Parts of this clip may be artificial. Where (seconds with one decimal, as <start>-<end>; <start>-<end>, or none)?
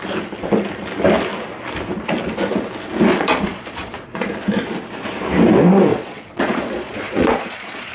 3.1-4.3; 5.9-7.9